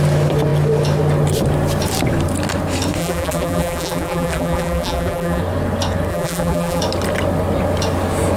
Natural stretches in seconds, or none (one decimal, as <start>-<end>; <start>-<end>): 0.0-3.0; 5.4-6.1; 6.8-8.4